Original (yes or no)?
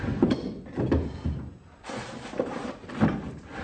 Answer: yes